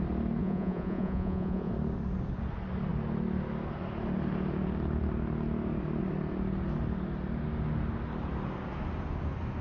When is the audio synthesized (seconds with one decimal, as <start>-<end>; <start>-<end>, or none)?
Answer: 0.4-1.7